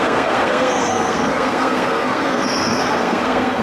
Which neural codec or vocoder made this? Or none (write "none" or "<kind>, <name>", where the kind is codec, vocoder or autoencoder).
codec, SNAC